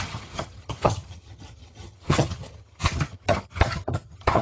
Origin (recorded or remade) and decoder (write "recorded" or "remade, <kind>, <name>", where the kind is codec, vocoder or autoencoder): remade, vocoder, HiFi-GAN